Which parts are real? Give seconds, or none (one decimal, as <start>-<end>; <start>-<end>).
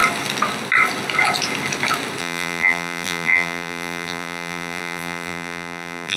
0.0-2.2